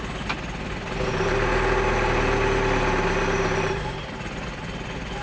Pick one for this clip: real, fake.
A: real